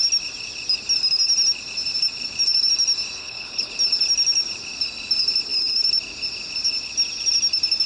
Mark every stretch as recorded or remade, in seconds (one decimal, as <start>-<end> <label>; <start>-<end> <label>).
0.0-3.2 recorded; 3.2-3.7 remade; 3.7-7.9 recorded